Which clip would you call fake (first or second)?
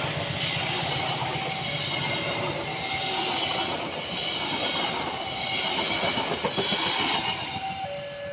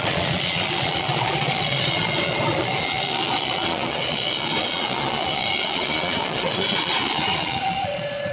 second